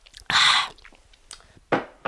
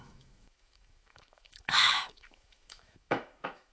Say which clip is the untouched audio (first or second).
first